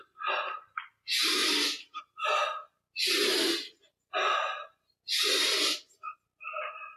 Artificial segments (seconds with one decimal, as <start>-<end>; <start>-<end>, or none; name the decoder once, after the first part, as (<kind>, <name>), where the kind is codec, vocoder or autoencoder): 1.4-2.0 (vocoder, BigVGAN v2)